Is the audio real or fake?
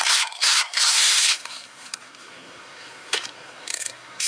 fake